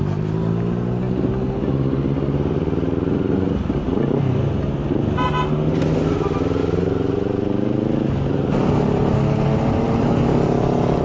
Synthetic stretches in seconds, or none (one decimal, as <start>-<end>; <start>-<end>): none